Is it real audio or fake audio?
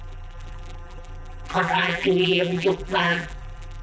fake